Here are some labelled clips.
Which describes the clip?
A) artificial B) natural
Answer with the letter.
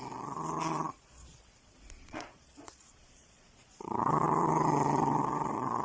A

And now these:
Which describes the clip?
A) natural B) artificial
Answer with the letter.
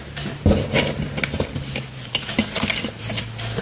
A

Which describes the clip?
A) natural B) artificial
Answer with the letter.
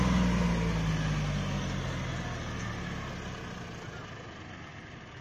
A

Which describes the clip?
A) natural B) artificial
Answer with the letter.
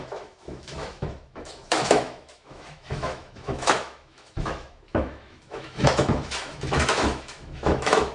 B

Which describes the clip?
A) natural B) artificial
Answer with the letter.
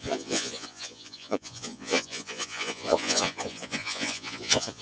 B